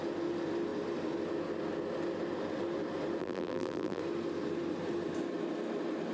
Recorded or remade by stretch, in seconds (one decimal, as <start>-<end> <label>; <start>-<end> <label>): 0.0-3.2 recorded; 3.2-4.0 remade; 4.0-6.1 recorded